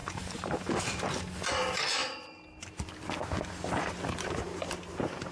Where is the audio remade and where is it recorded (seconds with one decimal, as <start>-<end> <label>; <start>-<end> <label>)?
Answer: 0.0-1.0 remade; 1.0-5.3 recorded